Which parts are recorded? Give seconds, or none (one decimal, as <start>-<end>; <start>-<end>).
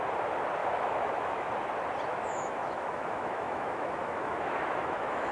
0.0-0.6; 1.5-2.1